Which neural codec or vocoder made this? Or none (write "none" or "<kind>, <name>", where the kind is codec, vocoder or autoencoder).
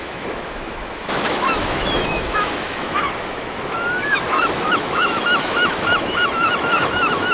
autoencoder, DAC-VAE